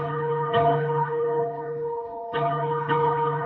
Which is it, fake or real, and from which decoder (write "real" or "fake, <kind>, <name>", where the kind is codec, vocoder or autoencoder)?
fake, codec, HILCodec